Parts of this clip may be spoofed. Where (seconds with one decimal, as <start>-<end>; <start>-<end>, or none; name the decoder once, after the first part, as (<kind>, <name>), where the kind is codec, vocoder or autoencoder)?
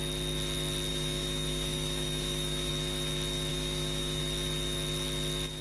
0.9-2.7 (autoencoder, DAC-VAE); 3.5-4.2